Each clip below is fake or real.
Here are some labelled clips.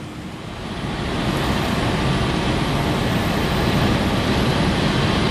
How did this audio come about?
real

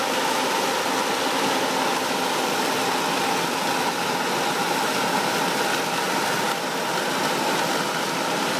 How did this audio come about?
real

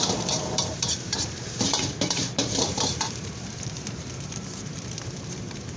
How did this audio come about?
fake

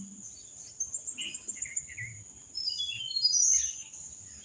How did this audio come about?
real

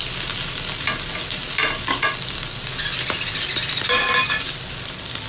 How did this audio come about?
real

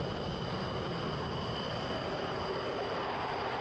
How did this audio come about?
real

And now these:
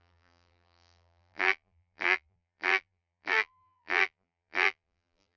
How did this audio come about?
fake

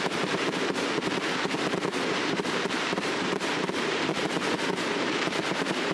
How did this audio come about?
fake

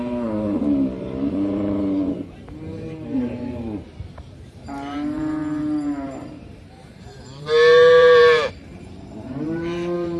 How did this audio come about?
fake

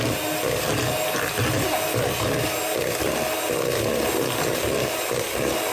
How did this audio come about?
real